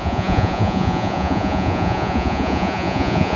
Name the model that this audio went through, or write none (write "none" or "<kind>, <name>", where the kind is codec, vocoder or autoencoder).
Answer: vocoder, Vocos